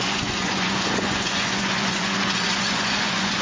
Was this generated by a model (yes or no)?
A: yes